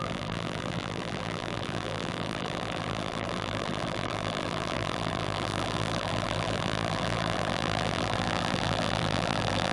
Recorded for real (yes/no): no